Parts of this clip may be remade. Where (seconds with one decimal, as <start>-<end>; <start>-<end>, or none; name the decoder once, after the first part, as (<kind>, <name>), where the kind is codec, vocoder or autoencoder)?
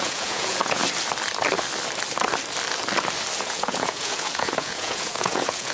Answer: 0.0-0.8 (vocoder, Vocos); 3.4-5.7